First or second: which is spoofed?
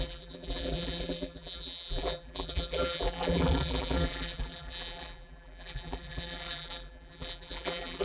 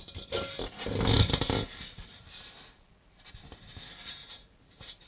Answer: first